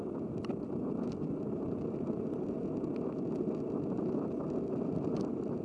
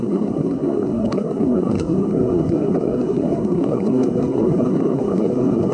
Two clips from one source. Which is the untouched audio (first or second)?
first